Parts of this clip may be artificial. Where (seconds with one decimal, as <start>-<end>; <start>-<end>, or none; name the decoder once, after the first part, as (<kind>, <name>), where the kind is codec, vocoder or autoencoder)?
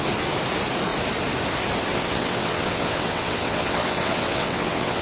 1.9-5.0 (vocoder, WaveNeXt)